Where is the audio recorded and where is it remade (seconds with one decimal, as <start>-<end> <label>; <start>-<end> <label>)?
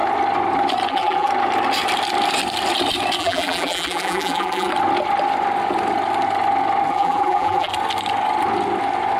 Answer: 0.0-0.9 recorded; 0.9-1.3 remade; 1.3-3.2 recorded; 3.2-4.7 remade; 4.7-6.9 recorded; 6.9-7.7 remade; 7.7-9.2 recorded